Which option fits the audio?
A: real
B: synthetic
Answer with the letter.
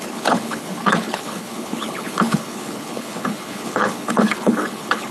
B